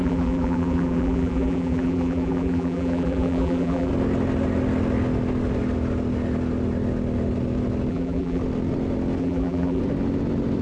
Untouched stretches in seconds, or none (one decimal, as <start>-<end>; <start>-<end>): 3.9-7.9; 8.4-9.2; 9.8-10.6